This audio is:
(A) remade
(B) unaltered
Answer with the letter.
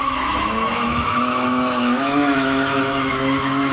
A